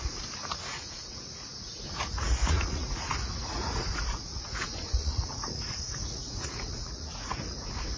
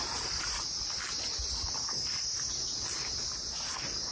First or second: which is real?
second